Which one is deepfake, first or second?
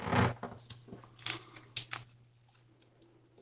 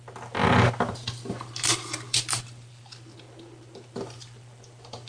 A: second